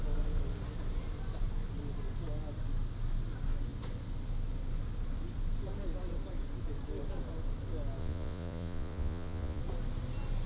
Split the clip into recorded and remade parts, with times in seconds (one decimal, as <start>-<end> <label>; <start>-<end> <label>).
0.0-8.0 recorded; 8.0-9.6 remade; 9.6-10.5 recorded